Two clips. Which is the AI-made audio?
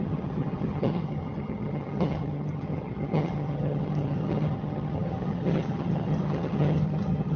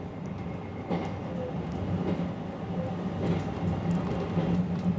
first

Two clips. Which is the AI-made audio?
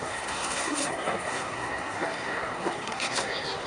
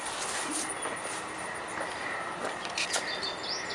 first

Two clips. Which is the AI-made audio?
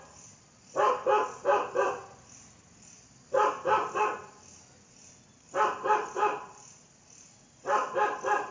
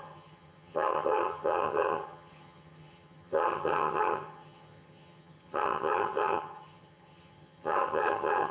second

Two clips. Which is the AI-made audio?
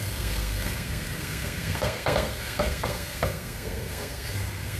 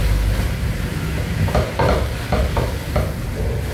first